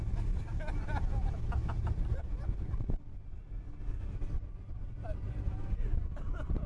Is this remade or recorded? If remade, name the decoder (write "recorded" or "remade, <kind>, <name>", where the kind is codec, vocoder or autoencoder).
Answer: recorded